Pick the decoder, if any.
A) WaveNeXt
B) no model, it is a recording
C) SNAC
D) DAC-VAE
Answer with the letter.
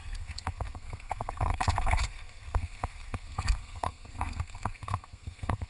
C